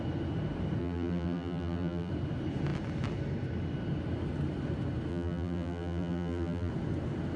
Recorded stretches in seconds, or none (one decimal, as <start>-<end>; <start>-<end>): 0.0-0.8; 2.1-5.1; 6.7-7.4